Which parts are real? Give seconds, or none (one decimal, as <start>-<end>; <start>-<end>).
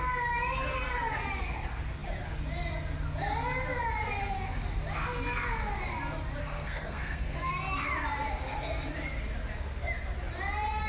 0.0-6.4; 7.5-10.9